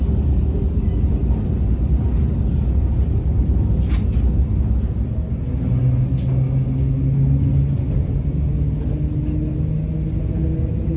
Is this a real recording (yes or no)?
yes